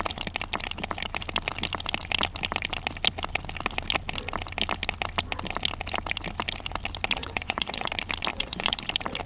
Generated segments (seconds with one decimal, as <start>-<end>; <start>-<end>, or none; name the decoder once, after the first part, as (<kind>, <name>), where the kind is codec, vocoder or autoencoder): 7.2-7.9 (vocoder, Vocos); 8.3-8.9